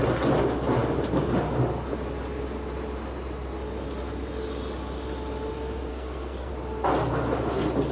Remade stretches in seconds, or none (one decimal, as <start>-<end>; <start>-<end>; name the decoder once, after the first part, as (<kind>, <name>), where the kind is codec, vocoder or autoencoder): 5.9-6.5 (codec, SNAC)